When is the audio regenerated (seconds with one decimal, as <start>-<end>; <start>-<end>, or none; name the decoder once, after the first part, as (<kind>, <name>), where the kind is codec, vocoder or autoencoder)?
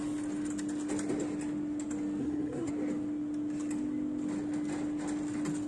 2.2-2.7 (codec, SNAC)